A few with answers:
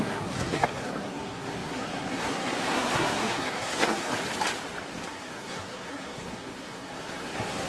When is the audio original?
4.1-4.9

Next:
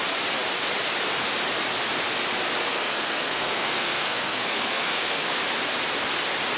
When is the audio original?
0.0-2.6; 5.3-6.6

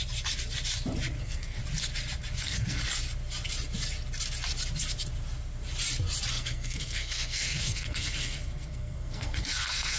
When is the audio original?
0.0-1.2; 1.6-2.4; 2.8-6.3

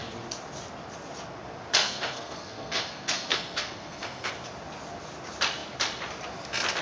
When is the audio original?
0.0-1.8; 4.3-6.8